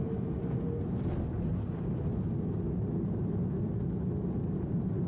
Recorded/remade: recorded